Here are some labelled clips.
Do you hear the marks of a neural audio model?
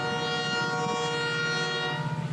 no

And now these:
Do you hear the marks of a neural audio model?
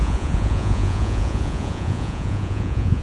yes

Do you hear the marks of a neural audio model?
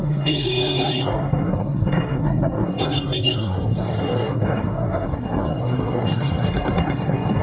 yes